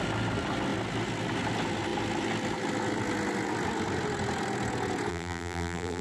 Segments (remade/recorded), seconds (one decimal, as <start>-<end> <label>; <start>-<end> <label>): 0.0-5.1 recorded; 5.1-6.0 remade